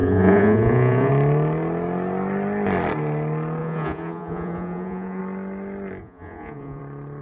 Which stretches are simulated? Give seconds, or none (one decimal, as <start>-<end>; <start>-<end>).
0.0-1.1; 3.6-5.2; 6.0-6.8